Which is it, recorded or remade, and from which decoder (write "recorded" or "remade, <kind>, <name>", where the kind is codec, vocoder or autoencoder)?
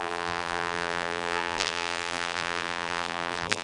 remade, vocoder, BigVGAN v2